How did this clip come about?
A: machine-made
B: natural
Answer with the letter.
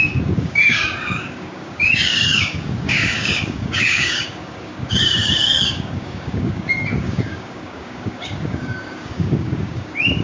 A